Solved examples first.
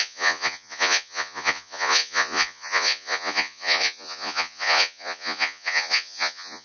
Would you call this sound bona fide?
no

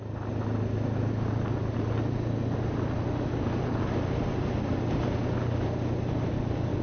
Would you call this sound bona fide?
yes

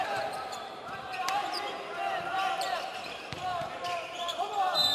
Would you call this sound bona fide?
no